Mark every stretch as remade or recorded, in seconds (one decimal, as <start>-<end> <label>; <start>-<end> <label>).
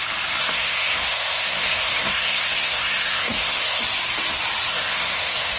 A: 0.0-0.4 recorded; 0.4-3.8 remade; 3.8-4.7 recorded; 4.7-5.6 remade